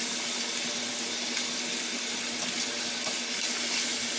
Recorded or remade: recorded